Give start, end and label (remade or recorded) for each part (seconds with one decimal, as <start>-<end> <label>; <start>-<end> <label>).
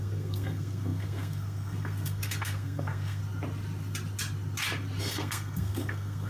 0.0-3.2 remade; 3.2-5.0 recorded; 5.0-6.3 remade